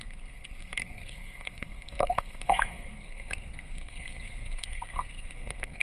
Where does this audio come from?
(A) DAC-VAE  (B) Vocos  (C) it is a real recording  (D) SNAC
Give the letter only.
D